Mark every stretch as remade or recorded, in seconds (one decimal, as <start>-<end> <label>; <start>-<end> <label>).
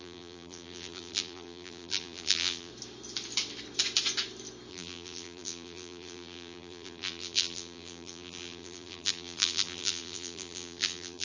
0.0-2.7 remade; 2.7-4.7 recorded; 4.7-11.2 remade